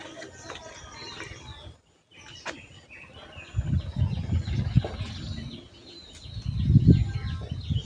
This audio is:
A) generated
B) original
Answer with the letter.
B